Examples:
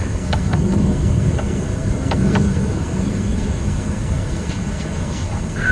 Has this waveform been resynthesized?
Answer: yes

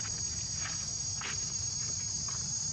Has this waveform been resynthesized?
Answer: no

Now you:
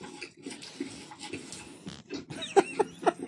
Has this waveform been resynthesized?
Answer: no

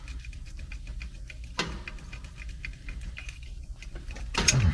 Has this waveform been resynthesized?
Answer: no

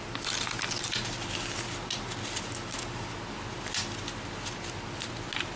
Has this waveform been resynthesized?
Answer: no